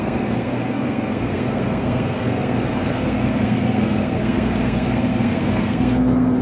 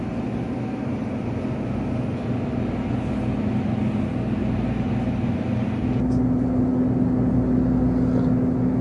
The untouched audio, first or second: second